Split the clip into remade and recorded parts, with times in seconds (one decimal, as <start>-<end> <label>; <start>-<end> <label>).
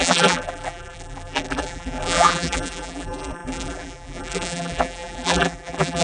0.0-6.0 remade